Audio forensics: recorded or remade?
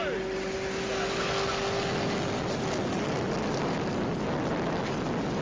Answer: recorded